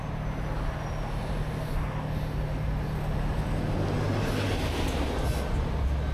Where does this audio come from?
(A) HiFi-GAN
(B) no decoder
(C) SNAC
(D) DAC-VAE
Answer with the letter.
B